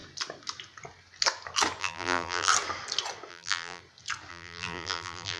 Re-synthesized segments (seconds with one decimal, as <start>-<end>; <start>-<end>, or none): 1.8-2.5; 3.3-3.8; 4.3-5.4